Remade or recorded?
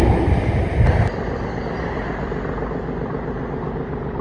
recorded